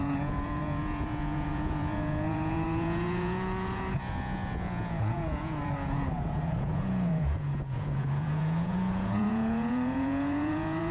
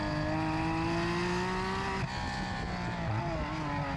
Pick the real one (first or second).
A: second